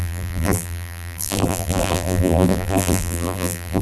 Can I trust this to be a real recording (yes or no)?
no